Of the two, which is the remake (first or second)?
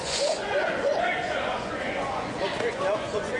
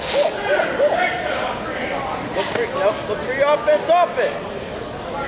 first